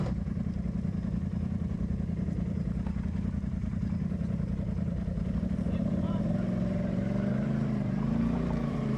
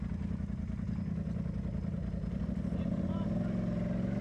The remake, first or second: first